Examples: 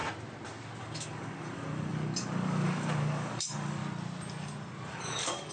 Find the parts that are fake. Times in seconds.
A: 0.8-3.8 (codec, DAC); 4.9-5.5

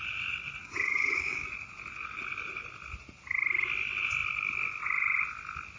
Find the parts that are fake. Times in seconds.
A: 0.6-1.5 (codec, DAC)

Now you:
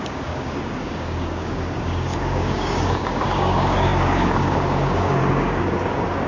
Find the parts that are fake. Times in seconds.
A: 0.0-6.3 (codec, DAC)